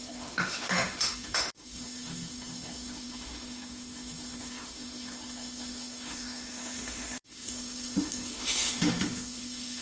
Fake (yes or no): yes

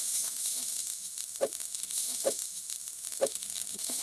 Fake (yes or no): yes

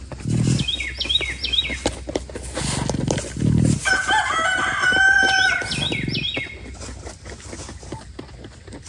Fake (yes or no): no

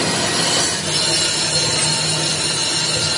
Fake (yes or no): no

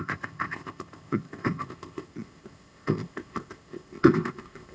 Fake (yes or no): yes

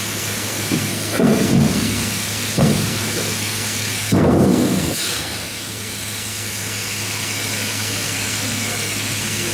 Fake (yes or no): yes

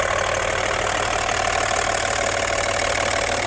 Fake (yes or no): no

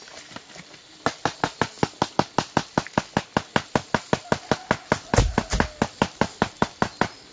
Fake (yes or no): no